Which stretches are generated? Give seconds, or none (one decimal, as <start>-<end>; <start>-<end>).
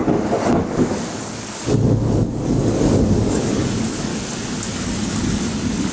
0.0-4.1; 4.7-5.9